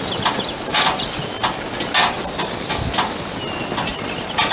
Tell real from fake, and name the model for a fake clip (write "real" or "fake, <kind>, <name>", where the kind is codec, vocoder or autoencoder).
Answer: real